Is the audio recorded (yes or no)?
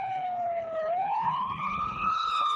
no